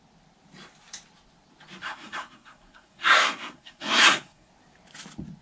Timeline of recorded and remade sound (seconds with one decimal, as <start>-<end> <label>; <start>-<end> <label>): 0.0-1.8 recorded; 1.8-4.5 remade; 4.5-5.4 recorded